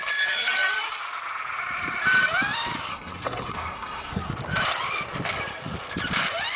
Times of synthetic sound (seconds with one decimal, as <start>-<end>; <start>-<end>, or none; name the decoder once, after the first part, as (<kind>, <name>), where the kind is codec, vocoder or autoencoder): 2.9-4.3 (codec, SNAC)